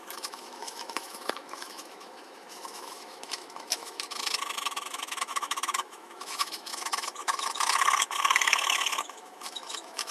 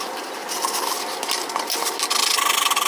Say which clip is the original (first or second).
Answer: second